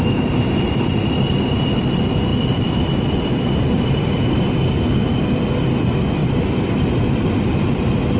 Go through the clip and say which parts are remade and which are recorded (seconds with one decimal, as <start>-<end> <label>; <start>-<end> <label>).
0.0-6.2 recorded; 6.2-6.9 remade; 6.9-8.2 recorded